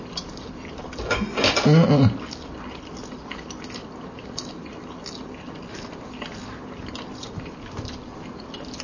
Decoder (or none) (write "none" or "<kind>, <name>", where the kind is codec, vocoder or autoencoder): none